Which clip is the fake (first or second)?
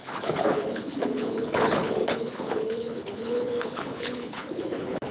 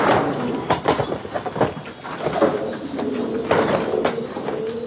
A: first